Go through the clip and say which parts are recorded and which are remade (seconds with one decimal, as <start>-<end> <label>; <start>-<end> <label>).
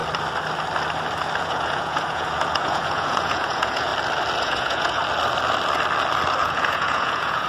0.0-1.4 recorded; 1.4-3.9 remade; 3.9-4.4 recorded; 4.4-5.0 remade; 5.0-6.4 recorded; 6.4-7.5 remade